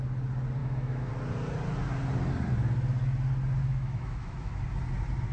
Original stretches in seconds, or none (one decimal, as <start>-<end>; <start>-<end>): 0.0-0.6; 1.1-3.6; 4.6-5.3